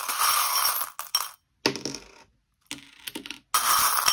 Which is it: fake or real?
real